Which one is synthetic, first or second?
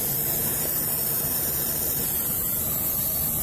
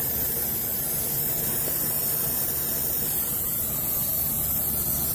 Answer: first